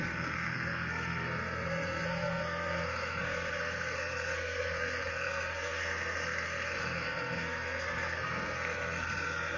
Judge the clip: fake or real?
fake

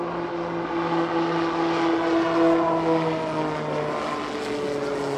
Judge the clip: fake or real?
real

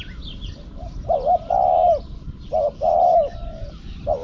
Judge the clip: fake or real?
real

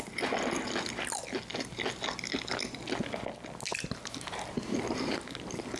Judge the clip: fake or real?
real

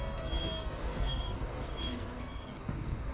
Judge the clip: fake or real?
fake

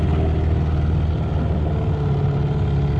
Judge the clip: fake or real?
real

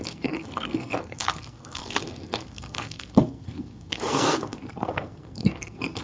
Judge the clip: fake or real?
fake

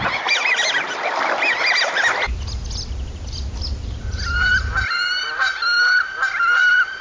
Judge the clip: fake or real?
real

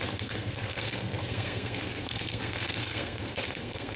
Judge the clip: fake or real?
fake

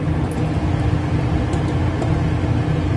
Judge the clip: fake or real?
real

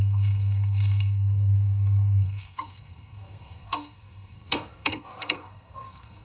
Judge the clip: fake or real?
fake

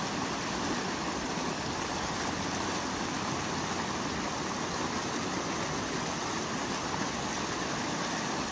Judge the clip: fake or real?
real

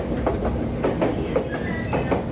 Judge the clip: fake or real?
real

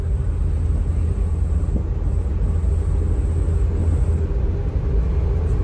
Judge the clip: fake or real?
real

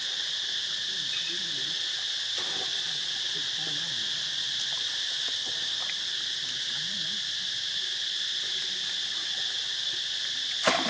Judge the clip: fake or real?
real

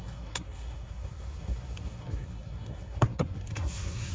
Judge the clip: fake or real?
fake